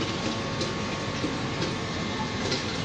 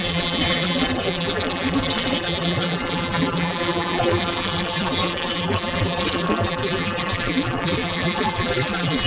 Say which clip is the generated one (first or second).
second